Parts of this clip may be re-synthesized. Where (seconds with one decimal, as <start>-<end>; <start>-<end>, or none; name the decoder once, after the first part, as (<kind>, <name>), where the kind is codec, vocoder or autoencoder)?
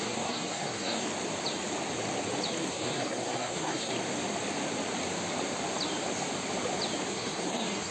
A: 0.0-1.1 (codec, SNAC); 2.7-3.9; 7.1-7.9